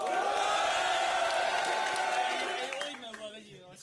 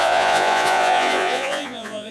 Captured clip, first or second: first